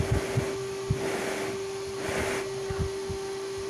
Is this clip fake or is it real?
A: real